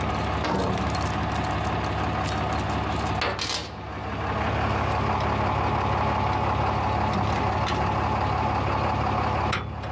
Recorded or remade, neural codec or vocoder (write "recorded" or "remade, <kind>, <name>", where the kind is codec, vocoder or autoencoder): recorded